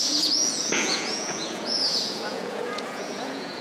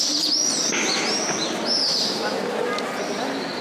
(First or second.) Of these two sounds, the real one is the second